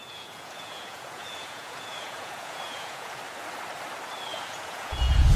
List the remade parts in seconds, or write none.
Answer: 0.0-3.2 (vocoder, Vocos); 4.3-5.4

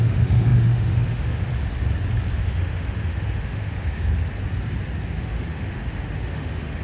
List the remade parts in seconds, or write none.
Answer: 0.0-1.5 (autoencoder, DAC-VAE); 2.4-4.1; 5.2-6.8